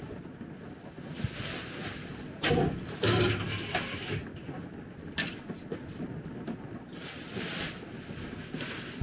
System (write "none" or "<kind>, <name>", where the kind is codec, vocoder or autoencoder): none